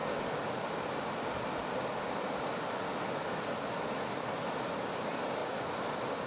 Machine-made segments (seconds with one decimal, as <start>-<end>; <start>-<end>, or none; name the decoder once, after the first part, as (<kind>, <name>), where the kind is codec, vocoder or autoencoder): none